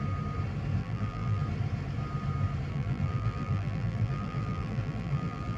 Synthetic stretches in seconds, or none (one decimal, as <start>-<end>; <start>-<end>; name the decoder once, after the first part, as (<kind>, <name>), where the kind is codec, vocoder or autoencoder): 0.8-1.4 (vocoder, BigVGAN v2); 2.7-5.6